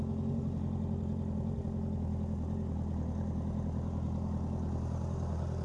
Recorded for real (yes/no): yes